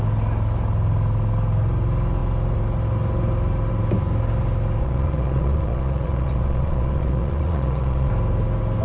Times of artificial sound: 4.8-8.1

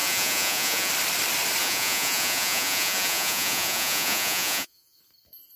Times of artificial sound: 0.0-0.9; 1.6-5.0

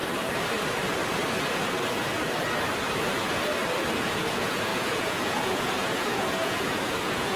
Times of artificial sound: 4.0-7.4

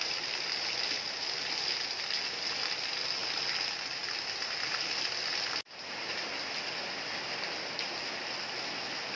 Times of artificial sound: none

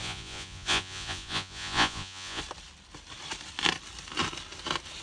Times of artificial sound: 0.0-2.4